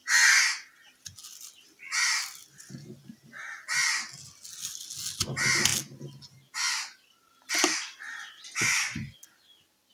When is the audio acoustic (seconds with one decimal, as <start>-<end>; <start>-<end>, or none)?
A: 0.0-9.9